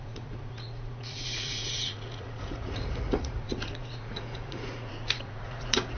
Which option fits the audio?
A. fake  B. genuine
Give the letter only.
A